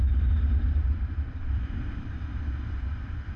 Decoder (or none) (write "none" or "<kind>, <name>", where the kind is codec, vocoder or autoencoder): vocoder, BigVGAN v2